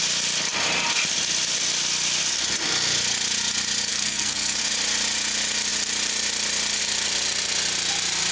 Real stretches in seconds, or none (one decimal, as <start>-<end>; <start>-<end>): 0.0-3.9; 4.6-8.3